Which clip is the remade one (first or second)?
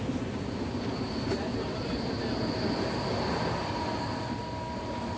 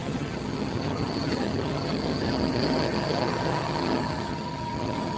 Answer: second